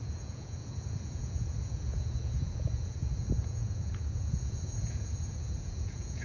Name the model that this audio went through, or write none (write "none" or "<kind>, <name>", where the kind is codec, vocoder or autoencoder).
vocoder, Vocos